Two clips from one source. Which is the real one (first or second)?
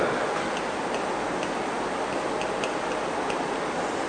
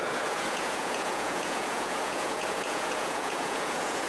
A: first